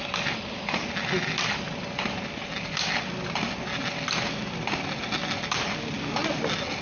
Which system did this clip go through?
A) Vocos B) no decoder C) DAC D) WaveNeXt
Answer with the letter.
B